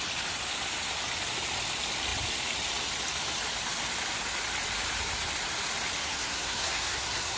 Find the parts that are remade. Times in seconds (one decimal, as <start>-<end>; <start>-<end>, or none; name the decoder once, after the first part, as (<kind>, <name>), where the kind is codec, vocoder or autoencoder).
6.0-7.4 (codec, SNAC)